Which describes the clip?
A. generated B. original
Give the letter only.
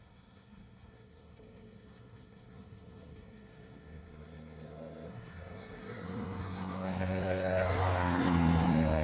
A